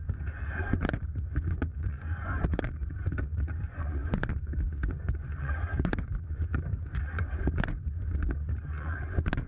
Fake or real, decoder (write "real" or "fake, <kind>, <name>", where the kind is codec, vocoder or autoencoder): fake, vocoder, Vocos